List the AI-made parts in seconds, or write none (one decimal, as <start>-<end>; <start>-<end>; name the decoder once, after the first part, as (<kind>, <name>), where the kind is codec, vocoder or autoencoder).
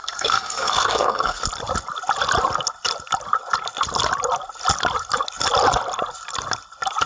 0.0-1.4 (codec, SNAC)